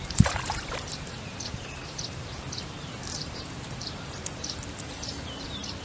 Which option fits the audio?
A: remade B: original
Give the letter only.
A